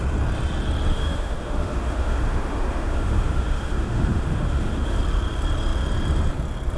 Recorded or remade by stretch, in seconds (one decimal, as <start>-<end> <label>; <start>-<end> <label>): 0.0-0.9 recorded; 0.9-5.0 remade; 5.0-6.8 recorded